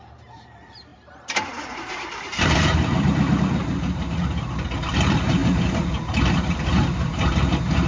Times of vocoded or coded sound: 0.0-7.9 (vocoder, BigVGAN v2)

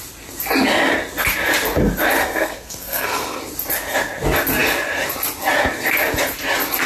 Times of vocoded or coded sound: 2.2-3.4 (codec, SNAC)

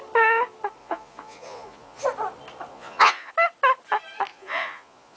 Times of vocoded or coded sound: 0.8-2.0 (vocoder, Vocos); 2.7-3.3; 4.3-5.2

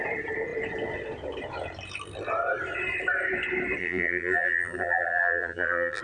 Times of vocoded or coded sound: 3.8-6.0 (vocoder, BigVGAN v2)

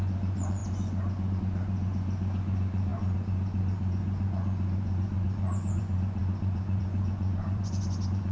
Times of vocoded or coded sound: 0.0-8.3 (vocoder, Vocos)

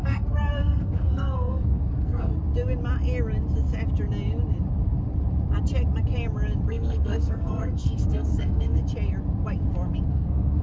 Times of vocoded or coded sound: 0.0-2.3 (codec, SNAC); 6.7-8.8; 10.1-10.6